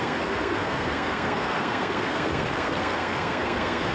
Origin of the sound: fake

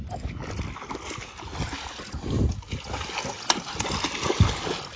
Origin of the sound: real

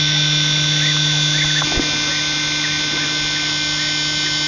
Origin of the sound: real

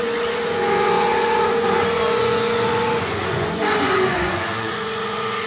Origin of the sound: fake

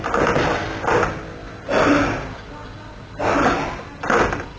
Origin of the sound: real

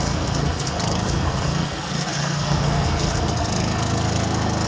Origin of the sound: fake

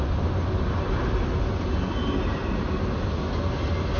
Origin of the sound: real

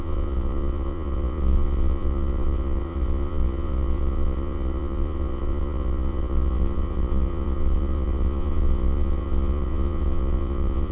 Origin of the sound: fake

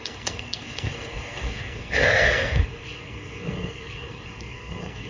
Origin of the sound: fake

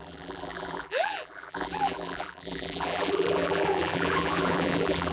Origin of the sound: fake